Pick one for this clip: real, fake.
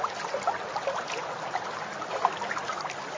real